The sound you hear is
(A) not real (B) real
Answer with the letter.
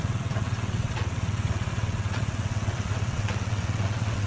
A